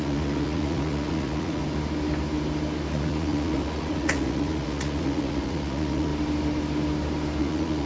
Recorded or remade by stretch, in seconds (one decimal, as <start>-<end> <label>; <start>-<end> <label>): 0.0-1.6 remade; 1.6-2.9 recorded; 2.9-6.1 remade; 6.1-7.4 recorded; 7.4-7.9 remade